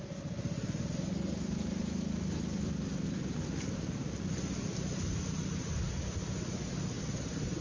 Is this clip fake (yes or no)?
no